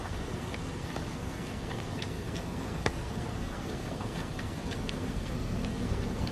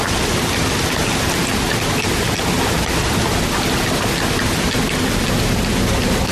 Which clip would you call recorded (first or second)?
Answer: second